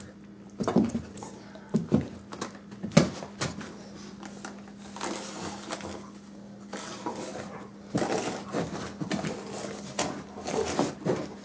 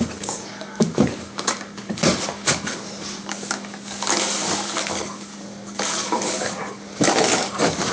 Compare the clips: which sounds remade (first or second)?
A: second